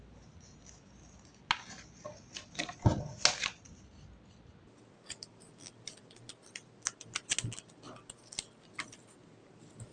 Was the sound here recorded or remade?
recorded